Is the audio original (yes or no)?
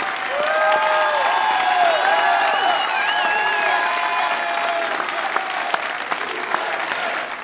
yes